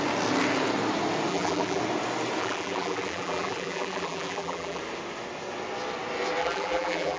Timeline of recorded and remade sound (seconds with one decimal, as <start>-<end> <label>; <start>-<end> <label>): 0.0-1.3 recorded; 1.3-1.8 remade; 1.8-2.4 recorded; 2.4-4.8 remade; 4.8-6.4 recorded; 6.4-7.2 remade